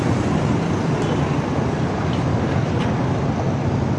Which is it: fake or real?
real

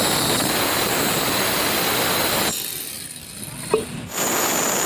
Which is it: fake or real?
real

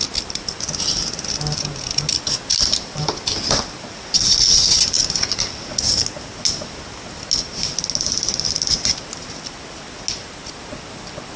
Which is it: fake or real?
real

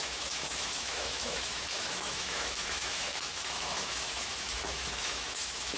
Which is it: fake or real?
fake